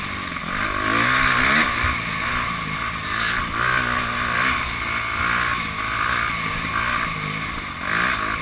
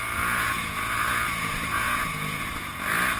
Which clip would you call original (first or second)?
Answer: first